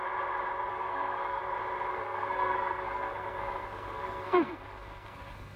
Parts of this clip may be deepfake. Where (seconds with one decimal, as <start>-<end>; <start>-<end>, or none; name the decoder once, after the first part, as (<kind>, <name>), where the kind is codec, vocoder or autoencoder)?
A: 0.7-1.4 (codec, SNAC); 1.9-5.6